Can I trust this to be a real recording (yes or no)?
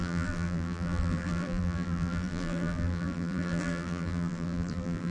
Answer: no